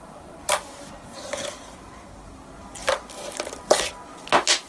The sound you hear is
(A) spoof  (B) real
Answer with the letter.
B